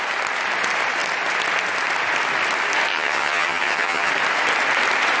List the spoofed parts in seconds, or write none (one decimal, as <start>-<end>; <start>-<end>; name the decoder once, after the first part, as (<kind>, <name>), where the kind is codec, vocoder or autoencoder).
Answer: 2.9-4.1 (vocoder, HiFi-GAN)